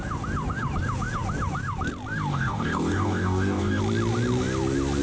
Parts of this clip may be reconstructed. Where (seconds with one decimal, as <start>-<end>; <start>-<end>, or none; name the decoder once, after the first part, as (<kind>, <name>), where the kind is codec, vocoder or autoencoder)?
2.3-3.8 (codec, DAC)